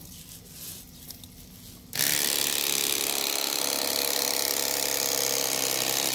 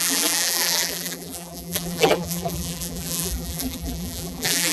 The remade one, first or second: second